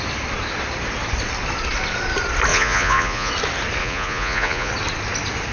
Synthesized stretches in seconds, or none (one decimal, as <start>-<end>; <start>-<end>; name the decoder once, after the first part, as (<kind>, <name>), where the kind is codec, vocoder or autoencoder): 2.5-3.3 (vocoder, Vocos); 3.8-4.7